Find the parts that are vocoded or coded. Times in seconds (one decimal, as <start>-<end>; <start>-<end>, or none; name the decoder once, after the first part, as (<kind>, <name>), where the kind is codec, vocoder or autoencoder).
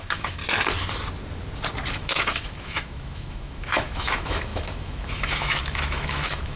0.0-0.4 (autoencoder, DAC-VAE); 1.9-6.6